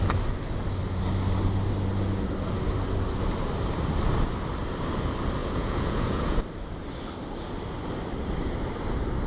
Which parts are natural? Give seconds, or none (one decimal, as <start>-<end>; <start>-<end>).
0.0-5.4; 6.4-9.3